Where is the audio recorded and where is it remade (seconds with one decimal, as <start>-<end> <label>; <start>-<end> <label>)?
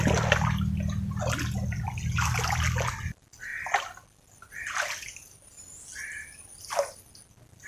0.0-7.7 recorded